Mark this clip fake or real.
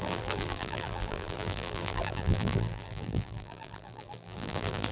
fake